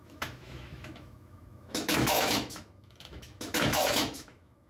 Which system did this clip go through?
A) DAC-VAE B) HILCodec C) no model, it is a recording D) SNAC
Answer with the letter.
A